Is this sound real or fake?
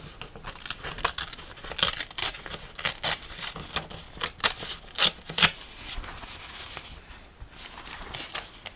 real